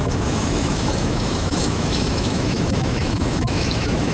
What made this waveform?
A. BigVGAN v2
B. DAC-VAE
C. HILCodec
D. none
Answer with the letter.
B